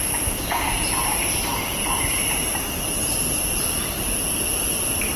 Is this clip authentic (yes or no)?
yes